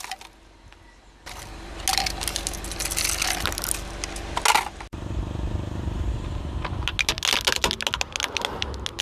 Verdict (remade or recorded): recorded